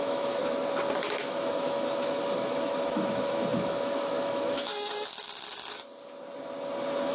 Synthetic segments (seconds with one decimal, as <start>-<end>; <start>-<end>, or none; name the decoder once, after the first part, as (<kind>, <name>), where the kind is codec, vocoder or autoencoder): 0.0-0.4 (autoencoder, DAC-VAE); 1.0-4.7

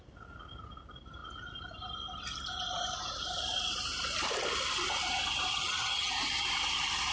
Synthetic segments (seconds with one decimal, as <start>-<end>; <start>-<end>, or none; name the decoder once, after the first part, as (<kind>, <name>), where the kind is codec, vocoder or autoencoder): 5.5-6.1 (vocoder, HiFi-GAN)

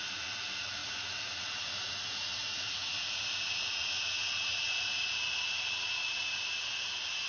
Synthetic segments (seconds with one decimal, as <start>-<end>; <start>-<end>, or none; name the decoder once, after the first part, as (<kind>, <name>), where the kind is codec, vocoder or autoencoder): 0.0-7.3 (vocoder, Vocos)